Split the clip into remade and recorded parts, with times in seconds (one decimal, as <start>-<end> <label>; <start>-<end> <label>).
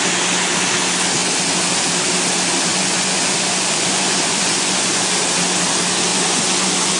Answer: 0.0-2.7 recorded; 2.7-5.2 remade; 5.2-6.1 recorded; 6.1-7.0 remade